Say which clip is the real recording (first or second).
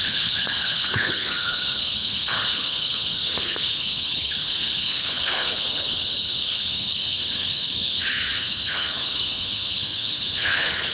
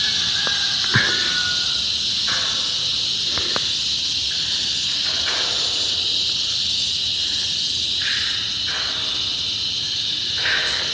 second